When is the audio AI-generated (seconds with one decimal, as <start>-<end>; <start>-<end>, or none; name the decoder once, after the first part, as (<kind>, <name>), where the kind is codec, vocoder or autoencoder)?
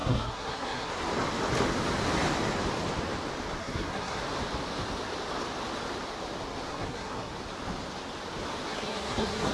0.0-0.9 (codec, SNAC); 3.6-4.2; 6.7-7.3; 8.7-9.5